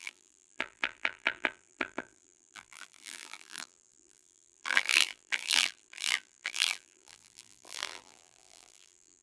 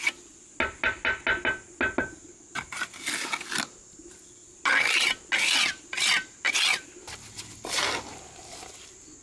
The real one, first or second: second